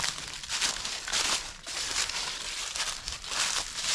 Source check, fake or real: real